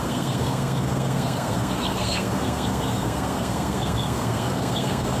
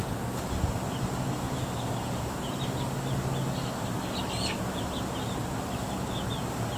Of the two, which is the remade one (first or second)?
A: first